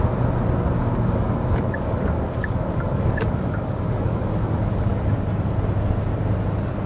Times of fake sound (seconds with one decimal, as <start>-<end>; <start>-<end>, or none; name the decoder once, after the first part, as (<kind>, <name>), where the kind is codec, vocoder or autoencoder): 0.8-4.9 (codec, DAC)